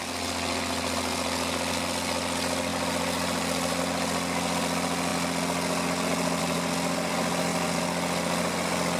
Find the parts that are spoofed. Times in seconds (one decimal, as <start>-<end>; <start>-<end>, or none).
2.7-3.8